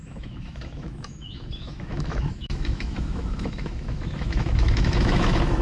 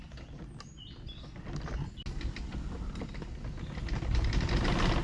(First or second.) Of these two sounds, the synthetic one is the first